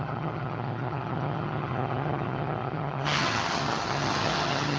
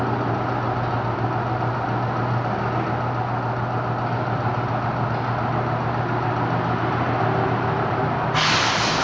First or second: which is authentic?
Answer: second